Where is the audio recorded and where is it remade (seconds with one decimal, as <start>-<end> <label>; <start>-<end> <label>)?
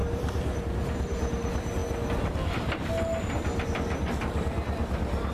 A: 0.0-0.6 remade; 0.6-5.3 recorded